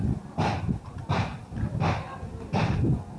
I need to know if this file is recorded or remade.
recorded